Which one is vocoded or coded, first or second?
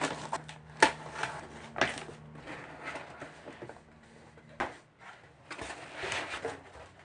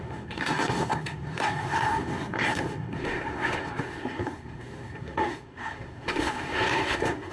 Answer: second